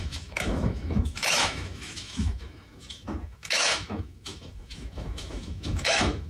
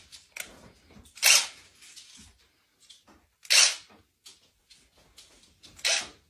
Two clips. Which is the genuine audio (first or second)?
second